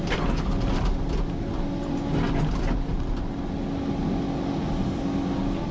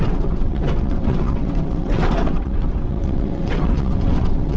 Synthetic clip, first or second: second